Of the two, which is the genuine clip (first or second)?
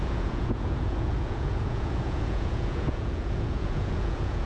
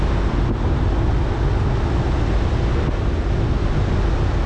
second